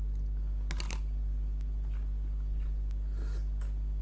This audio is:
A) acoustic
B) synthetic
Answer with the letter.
A